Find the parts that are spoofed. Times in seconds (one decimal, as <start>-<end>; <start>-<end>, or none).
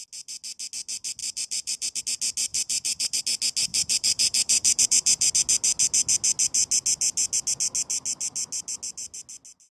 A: 1.2-2.0; 2.5-3.2; 3.7-5.3